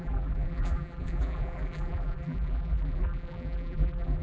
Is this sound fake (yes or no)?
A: yes